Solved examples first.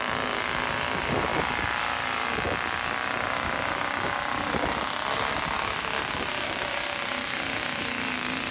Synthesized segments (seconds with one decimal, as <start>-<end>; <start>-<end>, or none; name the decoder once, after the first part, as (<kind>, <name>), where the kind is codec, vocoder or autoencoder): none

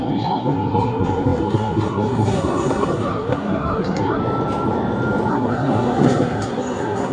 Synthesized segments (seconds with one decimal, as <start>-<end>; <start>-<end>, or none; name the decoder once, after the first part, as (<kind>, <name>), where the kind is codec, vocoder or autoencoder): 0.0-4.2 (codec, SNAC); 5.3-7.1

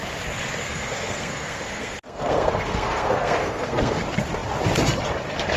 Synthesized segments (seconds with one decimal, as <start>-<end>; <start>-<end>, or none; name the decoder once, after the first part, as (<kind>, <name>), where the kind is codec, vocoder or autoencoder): 0.6-4.0 (codec, SNAC)

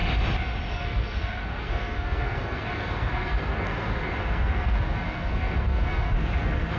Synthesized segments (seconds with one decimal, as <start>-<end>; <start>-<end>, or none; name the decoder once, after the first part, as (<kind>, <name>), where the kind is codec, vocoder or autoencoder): 0.7-6.8 (codec, SNAC)